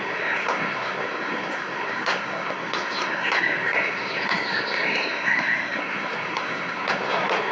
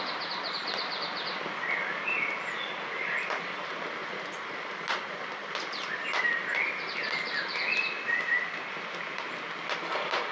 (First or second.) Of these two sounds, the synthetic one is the first